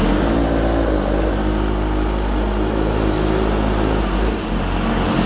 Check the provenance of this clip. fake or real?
real